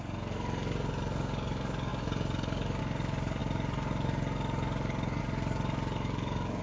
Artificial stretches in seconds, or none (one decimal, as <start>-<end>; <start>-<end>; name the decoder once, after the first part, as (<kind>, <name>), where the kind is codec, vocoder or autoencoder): 0.0-6.6 (codec, DAC)